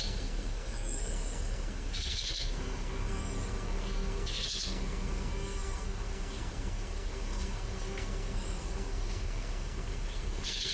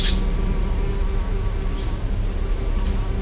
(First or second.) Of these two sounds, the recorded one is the second